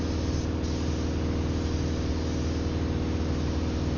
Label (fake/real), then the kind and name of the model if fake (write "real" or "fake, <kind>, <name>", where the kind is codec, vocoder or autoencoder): real